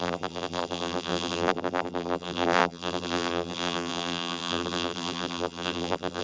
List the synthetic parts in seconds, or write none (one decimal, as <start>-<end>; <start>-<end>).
0.0-6.2